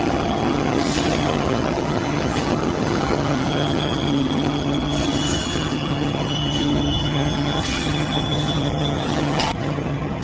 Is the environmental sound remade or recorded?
remade